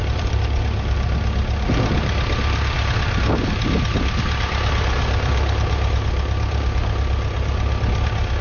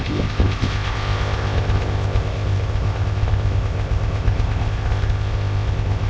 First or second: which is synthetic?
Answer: second